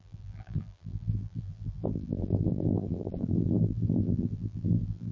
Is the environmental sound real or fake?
fake